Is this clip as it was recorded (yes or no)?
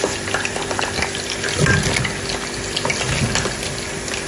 yes